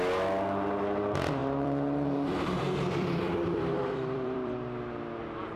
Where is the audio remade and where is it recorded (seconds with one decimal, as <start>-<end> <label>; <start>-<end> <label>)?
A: 0.0-1.4 recorded; 1.4-4.5 remade; 4.5-5.6 recorded